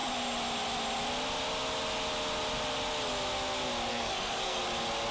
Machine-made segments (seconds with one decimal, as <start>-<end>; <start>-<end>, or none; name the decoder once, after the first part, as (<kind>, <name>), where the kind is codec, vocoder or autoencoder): 3.9-4.6 (codec, SNAC)